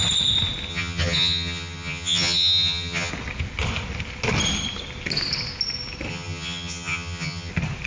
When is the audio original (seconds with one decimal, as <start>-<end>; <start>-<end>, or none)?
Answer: 0.0-0.7; 3.1-6.1; 7.5-7.9